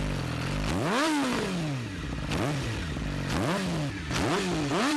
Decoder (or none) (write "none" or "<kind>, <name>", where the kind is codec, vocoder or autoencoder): none